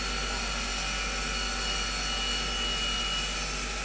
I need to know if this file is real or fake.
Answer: real